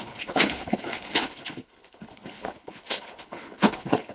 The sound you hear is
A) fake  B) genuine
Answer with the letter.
A